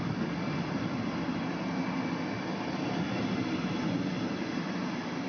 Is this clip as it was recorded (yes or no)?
yes